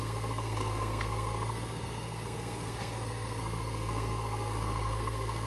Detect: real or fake fake